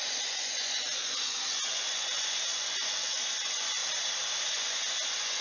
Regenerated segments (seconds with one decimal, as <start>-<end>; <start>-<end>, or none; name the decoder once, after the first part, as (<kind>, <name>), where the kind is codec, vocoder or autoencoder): 0.0-3.8 (vocoder, Vocos); 4.5-5.4